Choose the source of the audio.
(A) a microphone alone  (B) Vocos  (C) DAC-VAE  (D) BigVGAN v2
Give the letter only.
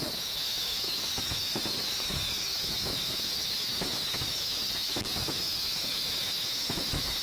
C